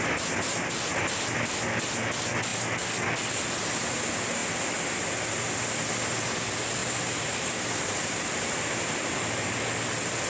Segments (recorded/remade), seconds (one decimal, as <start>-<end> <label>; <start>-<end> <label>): 0.0-6.8 recorded; 6.8-9.6 remade; 9.6-10.3 recorded